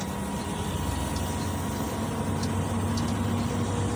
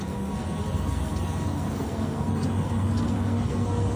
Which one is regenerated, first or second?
second